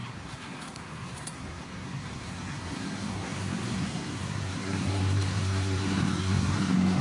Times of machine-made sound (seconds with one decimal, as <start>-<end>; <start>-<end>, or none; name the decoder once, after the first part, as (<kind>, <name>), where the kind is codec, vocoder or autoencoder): 0.0-7.0 (codec, SNAC)

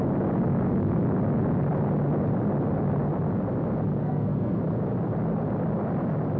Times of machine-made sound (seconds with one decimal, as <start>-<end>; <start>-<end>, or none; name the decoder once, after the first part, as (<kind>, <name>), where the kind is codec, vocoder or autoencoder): 4.0-4.6 (codec, SNAC)

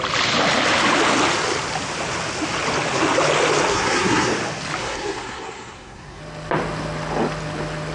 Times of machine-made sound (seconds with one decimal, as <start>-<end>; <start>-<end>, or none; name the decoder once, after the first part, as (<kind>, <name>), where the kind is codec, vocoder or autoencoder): 3.7-4.3 (codec, SNAC); 4.8-6.2

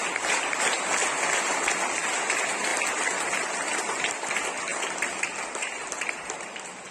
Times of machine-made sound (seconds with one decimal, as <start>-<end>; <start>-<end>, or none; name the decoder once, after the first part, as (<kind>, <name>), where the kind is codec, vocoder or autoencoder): none

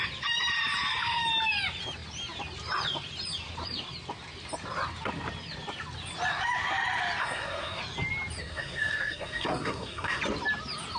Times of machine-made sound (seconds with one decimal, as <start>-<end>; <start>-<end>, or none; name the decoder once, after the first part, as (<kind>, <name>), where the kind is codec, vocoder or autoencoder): 7.2-7.8 (codec, SNAC); 8.4-10.2

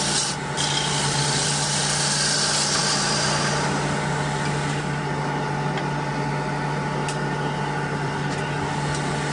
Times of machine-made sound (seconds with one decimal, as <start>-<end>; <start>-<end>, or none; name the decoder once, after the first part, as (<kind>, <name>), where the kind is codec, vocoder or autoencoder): none

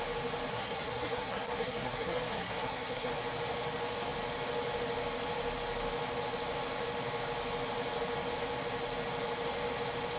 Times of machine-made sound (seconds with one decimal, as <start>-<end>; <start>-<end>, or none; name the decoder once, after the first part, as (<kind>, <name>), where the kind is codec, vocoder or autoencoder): 0.5-3.1 (codec, SNAC)